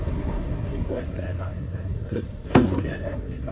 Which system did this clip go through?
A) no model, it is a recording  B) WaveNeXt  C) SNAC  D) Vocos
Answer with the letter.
C